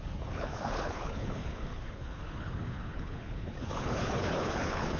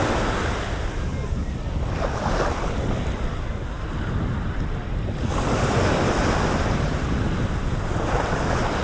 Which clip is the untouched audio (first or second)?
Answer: second